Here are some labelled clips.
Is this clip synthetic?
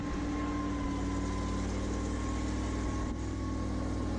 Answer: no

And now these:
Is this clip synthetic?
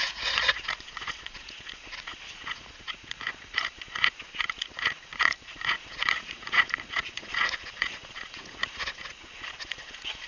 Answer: yes